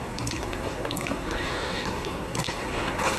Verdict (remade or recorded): remade